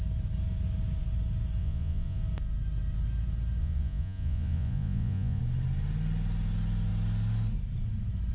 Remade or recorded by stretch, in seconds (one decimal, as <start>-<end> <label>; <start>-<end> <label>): 0.0-1.6 recorded; 1.6-2.2 remade; 2.2-3.6 recorded; 3.6-5.4 remade; 5.4-8.3 recorded